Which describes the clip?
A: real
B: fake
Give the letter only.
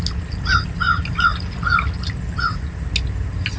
A